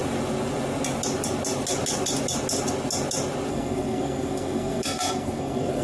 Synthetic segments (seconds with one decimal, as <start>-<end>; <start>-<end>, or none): 3.5-5.8

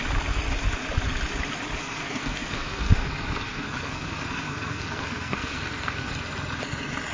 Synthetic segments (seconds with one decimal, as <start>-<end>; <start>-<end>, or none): 1.8-6.1

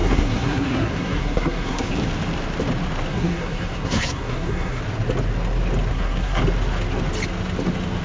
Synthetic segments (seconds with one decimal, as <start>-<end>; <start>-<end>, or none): 0.0-1.9; 3.1-4.8; 5.9-6.4